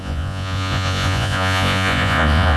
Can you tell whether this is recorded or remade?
remade